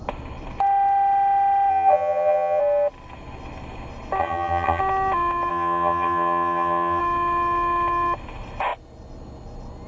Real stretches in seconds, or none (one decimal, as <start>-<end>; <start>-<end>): 0.0-1.7; 2.6-4.2; 4.8-5.5; 7.0-9.9